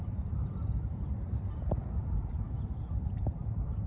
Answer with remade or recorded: remade